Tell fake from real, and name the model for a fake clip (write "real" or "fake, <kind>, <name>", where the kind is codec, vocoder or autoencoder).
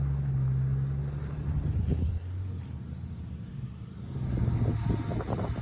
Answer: real